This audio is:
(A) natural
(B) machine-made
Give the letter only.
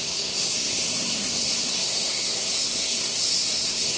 B